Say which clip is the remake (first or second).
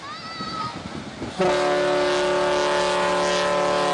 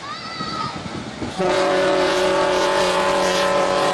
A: second